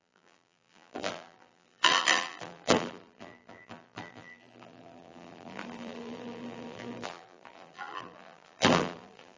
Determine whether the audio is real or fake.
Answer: fake